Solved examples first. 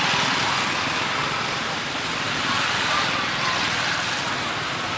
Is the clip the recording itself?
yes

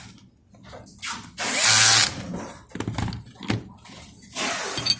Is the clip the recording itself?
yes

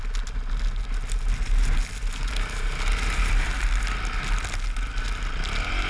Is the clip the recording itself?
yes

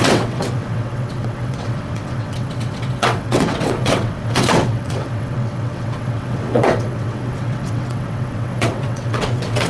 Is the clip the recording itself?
no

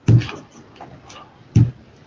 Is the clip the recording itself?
yes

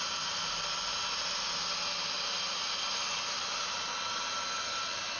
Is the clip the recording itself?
yes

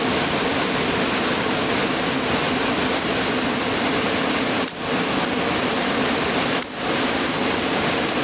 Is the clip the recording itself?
yes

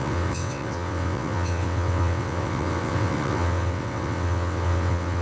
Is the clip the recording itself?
no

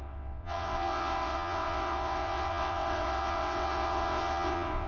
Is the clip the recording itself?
no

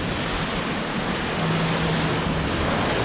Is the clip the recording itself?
yes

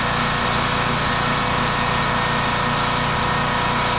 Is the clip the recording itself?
yes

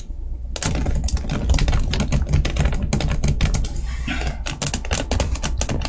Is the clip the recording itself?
yes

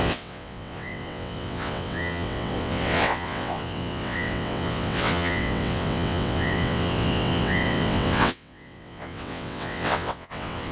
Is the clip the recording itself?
no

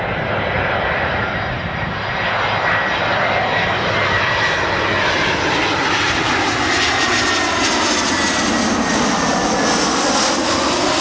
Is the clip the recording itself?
yes